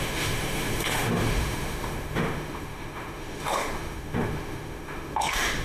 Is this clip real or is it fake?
fake